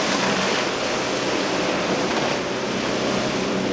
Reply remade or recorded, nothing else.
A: recorded